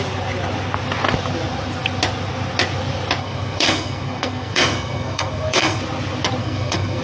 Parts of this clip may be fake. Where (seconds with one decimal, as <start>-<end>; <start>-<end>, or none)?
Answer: 3.2-5.8; 6.4-7.0